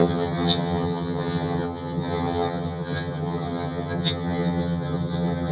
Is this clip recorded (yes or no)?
no